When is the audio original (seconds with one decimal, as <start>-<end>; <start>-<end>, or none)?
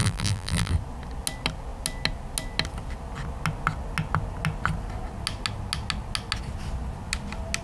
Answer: 0.7-7.6